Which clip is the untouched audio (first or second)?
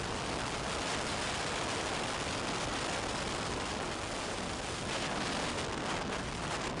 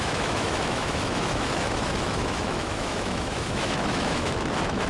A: first